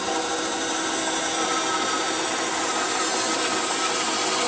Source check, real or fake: real